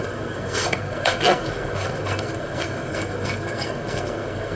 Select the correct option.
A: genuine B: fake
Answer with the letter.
B